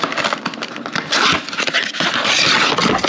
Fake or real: real